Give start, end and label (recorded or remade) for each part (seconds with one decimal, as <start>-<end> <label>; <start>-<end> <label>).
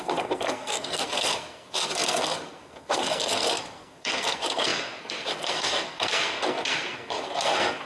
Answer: 0.0-7.9 remade